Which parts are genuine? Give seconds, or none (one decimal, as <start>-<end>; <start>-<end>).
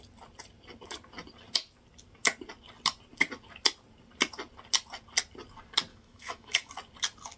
0.0-5.9; 6.7-7.4